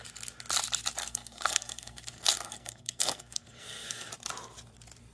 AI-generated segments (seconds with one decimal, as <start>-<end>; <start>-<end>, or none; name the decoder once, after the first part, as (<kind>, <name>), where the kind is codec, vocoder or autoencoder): 1.0-4.1 (codec, SNAC)